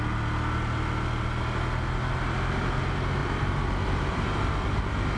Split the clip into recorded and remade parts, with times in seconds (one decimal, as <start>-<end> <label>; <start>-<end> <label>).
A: 0.0-3.2 recorded; 3.2-4.8 remade; 4.8-5.2 recorded